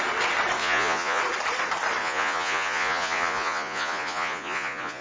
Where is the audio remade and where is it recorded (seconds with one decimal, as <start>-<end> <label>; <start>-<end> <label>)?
0.0-0.6 recorded; 0.6-1.2 remade; 1.2-2.0 recorded; 2.0-5.0 remade